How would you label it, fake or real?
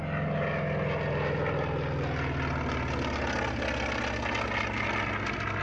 real